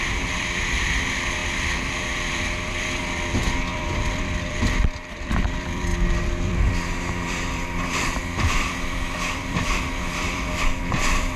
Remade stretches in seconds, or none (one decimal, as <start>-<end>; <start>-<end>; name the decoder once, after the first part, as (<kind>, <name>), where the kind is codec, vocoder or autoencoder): 0.0-11.4 (vocoder, BigVGAN v2)